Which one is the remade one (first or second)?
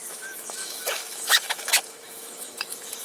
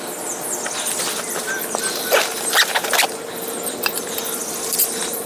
first